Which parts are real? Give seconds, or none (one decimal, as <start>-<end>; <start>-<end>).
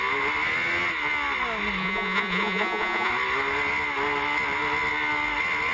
0.0-1.8; 3.1-5.7